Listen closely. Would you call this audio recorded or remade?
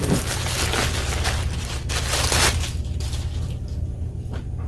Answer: recorded